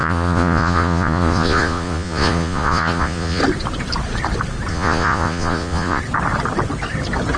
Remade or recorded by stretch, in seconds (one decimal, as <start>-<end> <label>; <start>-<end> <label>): 0.0-3.4 remade; 3.4-4.7 recorded; 4.7-6.0 remade; 6.0-7.4 recorded